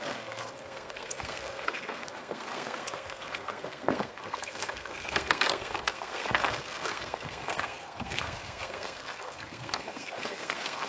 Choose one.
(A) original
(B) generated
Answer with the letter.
B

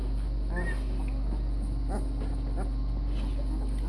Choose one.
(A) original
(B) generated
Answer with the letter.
A